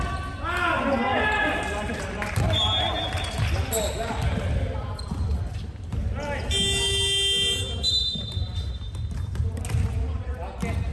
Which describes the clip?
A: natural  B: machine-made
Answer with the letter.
A